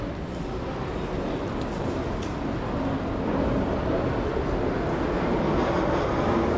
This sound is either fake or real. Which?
real